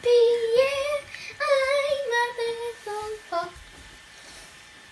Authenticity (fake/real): fake